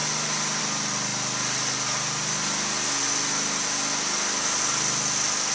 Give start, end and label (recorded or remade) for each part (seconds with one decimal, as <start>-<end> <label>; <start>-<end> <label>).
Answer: 0.0-5.5 recorded